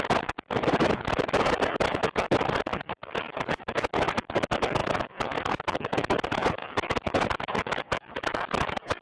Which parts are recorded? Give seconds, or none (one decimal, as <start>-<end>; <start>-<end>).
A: 0.0-9.0